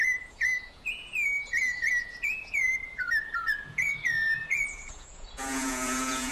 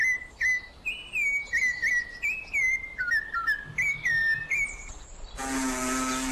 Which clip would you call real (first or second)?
second